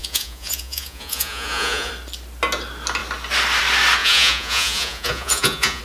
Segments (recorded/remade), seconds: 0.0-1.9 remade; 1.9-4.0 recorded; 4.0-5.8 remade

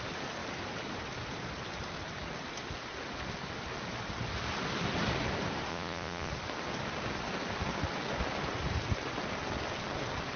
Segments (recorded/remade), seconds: 0.0-5.7 recorded; 5.7-6.3 remade; 6.3-10.4 recorded